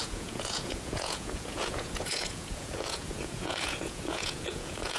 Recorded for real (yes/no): no